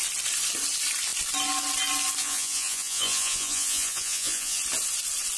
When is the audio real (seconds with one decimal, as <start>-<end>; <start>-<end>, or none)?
0.0-2.2; 4.6-5.4